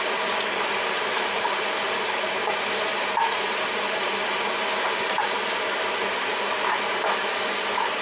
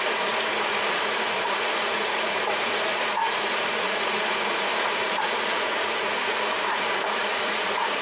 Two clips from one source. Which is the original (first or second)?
first